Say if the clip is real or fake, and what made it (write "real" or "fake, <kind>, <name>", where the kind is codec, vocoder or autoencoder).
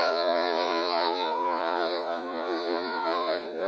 fake, vocoder, Vocos